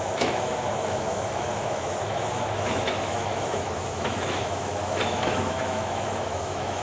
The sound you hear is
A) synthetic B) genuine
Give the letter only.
A